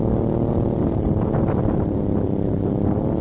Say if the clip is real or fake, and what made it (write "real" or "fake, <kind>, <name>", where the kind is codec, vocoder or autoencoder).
real